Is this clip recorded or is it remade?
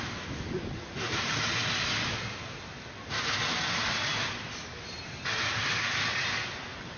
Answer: recorded